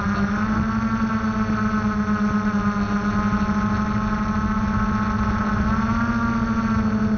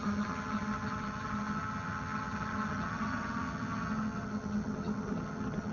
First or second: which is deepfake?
second